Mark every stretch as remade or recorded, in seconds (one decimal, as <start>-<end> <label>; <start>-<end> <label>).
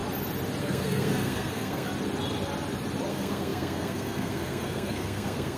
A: 0.0-0.6 recorded; 0.6-1.9 remade; 1.9-3.1 recorded; 3.1-5.6 remade